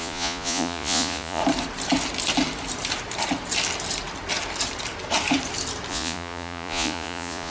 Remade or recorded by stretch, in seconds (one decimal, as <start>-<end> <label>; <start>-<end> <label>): 0.0-1.4 remade; 1.4-5.9 recorded; 5.9-7.5 remade

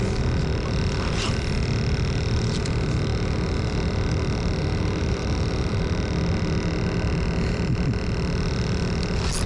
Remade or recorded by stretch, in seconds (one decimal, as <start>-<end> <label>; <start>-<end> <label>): 0.0-4.6 recorded; 4.6-5.8 remade; 5.8-9.5 recorded

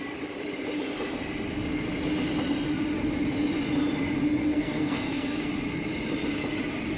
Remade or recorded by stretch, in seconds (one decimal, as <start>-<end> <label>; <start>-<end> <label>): 0.0-4.4 recorded; 4.4-5.5 remade; 5.5-7.0 recorded

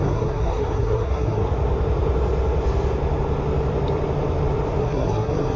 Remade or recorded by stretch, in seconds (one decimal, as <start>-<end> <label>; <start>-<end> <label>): 0.0-1.4 remade; 1.4-4.8 recorded; 4.8-5.6 remade

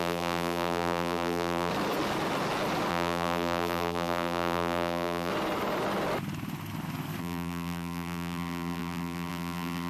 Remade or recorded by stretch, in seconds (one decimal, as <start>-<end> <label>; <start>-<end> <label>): 0.0-1.7 remade; 1.7-2.9 recorded; 2.9-5.3 remade; 5.3-7.2 recorded; 7.2-9.9 remade